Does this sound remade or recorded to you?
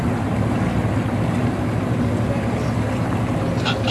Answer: recorded